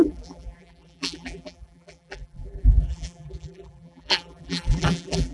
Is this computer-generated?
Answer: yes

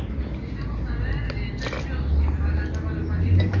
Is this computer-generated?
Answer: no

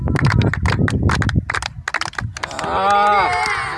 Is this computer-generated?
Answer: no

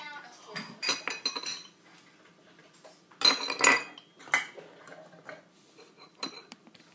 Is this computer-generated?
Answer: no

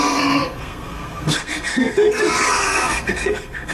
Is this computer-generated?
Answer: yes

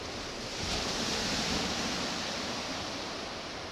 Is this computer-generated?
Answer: yes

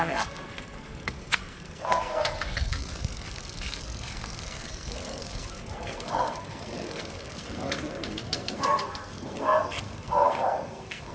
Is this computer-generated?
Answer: yes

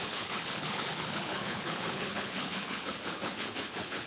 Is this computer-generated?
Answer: yes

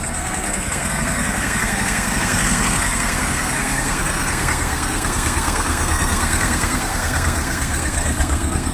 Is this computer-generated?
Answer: yes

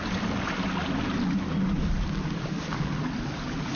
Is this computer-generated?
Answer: no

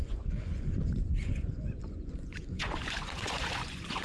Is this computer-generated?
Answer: yes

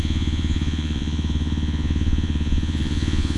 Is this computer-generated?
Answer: yes